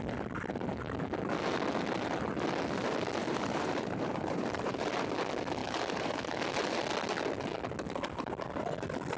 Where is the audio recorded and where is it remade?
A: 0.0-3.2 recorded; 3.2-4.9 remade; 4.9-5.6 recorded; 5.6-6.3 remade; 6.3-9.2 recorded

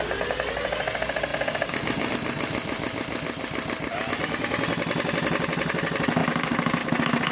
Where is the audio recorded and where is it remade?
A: 0.0-6.2 recorded; 6.2-6.8 remade; 6.8-7.3 recorded